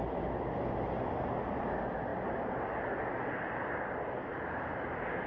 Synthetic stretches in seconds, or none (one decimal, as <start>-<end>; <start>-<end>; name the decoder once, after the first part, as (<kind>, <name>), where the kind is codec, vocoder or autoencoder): none